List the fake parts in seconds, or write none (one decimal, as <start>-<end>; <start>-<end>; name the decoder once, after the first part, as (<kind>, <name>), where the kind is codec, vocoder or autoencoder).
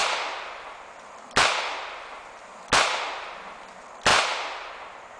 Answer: none